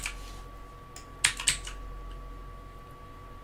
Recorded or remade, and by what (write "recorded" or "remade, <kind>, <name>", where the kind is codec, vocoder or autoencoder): recorded